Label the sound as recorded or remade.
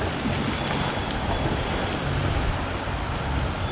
recorded